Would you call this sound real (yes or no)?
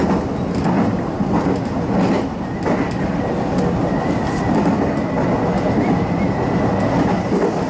yes